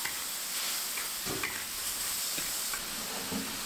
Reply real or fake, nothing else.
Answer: real